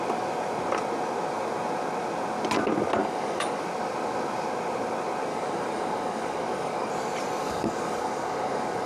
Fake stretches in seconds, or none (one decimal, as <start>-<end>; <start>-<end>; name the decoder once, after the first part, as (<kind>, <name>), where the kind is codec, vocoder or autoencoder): 3.0-3.6 (codec, DAC); 5.3-6.9; 7.4-8.9